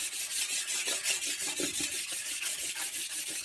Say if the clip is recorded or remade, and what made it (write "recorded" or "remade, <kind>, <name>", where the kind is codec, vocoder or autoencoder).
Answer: recorded